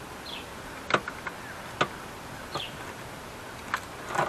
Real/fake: real